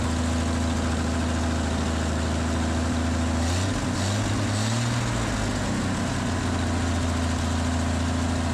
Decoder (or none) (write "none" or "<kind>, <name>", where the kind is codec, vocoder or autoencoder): none